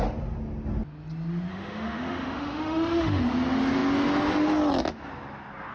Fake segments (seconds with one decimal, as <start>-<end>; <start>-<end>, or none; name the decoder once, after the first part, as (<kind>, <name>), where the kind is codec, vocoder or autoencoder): 1.5-3.2 (autoencoder, DAC-VAE)